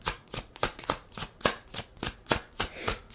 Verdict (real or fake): fake